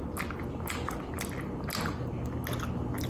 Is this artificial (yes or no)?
no